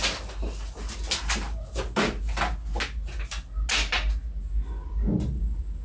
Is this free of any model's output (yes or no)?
yes